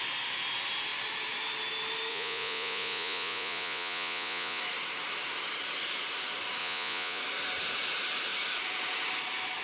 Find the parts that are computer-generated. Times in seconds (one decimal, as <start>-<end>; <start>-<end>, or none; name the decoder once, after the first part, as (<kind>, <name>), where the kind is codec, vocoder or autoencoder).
2.1-4.6 (vocoder, Vocos); 6.6-7.2